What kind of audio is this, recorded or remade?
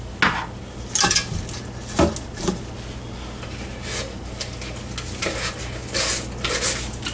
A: recorded